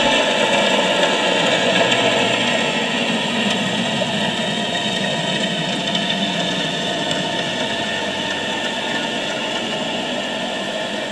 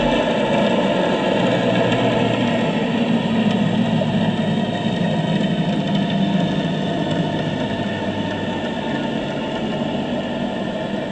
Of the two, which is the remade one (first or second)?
first